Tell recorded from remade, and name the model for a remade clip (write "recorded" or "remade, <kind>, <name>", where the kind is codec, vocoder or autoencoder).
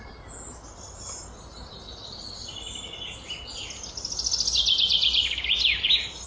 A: recorded